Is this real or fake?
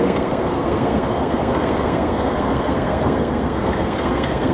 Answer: fake